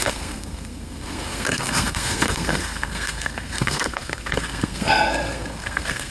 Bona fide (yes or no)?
no